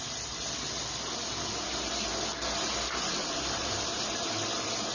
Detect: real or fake real